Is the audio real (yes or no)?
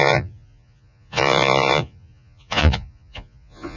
no